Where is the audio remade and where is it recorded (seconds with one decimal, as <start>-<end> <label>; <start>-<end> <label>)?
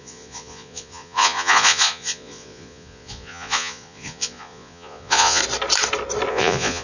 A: 0.0-5.4 remade; 5.4-6.3 recorded; 6.3-6.8 remade